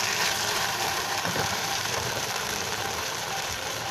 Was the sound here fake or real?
fake